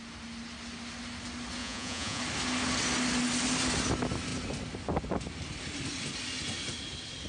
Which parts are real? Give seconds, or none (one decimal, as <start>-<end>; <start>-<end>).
0.0-1.6; 2.2-7.3